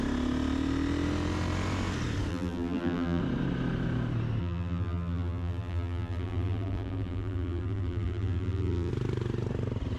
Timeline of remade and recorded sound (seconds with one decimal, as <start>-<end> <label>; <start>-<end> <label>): 0.0-2.3 recorded; 2.3-3.2 remade; 3.2-4.4 recorded; 4.4-8.9 remade; 8.9-10.0 recorded

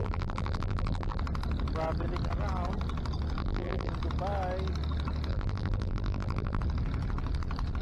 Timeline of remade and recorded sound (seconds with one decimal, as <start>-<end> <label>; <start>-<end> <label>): 0.0-1.2 remade; 1.2-3.4 recorded; 3.4-3.9 remade; 3.9-5.3 recorded; 5.3-6.6 remade; 6.6-7.8 recorded